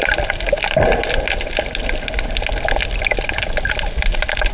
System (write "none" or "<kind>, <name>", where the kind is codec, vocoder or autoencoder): none